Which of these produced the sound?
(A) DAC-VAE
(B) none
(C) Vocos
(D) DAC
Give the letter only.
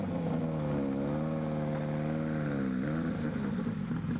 B